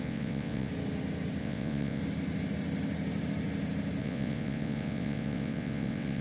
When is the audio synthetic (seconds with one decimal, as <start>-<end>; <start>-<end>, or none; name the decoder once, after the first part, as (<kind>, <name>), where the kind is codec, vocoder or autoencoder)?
0.0-0.7 (vocoder, WaveNeXt); 1.4-2.0; 4.0-6.2